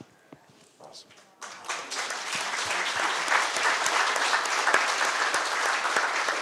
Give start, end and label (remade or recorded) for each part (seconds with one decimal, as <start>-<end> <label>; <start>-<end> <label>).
0.0-6.4 recorded